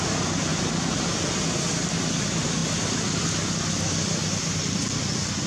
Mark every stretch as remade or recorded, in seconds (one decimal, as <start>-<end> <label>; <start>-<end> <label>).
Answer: 0.0-5.5 recorded